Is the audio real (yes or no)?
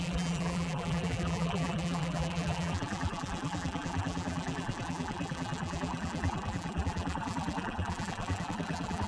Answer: no